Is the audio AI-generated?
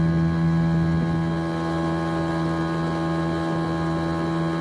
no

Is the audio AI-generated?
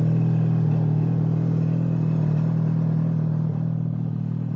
no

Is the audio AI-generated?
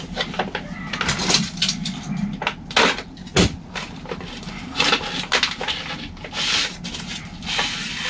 no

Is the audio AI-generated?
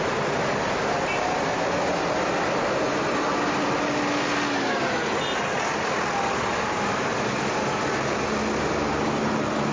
no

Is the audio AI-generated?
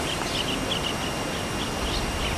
no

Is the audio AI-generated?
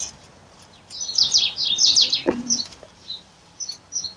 no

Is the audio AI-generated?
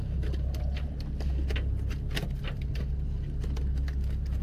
no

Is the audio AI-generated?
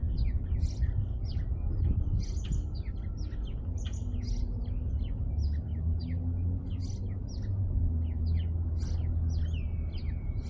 no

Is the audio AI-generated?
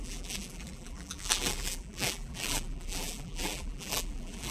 yes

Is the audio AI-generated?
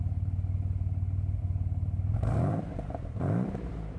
yes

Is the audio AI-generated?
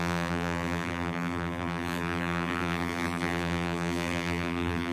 yes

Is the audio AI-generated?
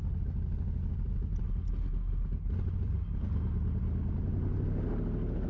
no